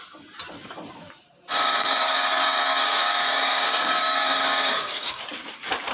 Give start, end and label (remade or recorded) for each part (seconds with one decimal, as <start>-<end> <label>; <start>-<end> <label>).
0.0-1.7 recorded; 1.7-5.2 remade; 5.2-5.9 recorded

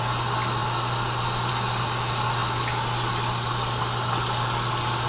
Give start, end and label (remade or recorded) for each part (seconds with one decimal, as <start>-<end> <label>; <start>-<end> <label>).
0.0-5.1 recorded

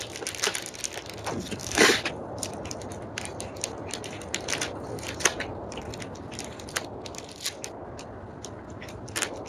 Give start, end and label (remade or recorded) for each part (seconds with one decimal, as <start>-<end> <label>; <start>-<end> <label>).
0.0-1.6 recorded; 1.6-2.1 remade; 2.1-9.5 recorded

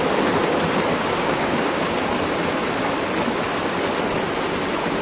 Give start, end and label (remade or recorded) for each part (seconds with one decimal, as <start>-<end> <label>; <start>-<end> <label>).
0.0-0.9 recorded; 0.9-1.9 remade; 1.9-5.0 recorded